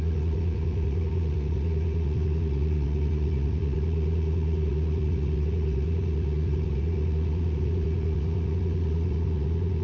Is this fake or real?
fake